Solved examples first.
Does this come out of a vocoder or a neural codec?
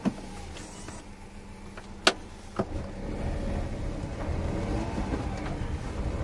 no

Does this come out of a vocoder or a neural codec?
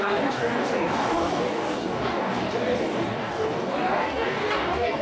yes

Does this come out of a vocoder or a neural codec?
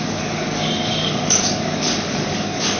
yes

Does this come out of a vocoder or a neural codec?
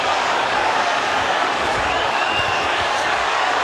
yes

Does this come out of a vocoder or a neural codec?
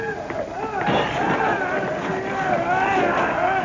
no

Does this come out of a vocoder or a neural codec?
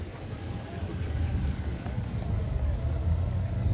yes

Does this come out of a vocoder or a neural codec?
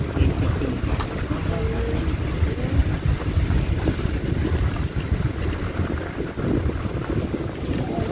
no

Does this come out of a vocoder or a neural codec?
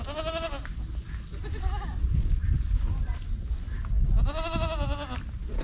no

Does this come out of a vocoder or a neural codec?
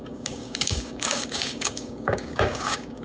yes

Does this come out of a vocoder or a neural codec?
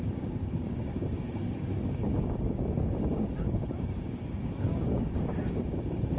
yes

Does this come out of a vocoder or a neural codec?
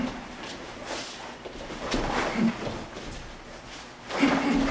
no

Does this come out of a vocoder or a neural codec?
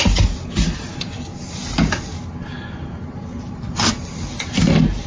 no